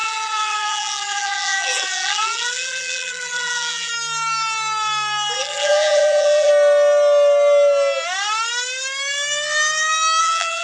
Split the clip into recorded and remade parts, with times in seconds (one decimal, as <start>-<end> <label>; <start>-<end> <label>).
0.0-3.9 remade; 3.9-5.4 recorded; 5.4-6.5 remade; 6.5-10.2 recorded; 10.2-10.6 remade